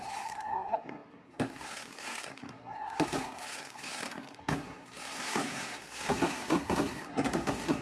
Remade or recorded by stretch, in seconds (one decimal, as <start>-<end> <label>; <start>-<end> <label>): 0.0-7.8 remade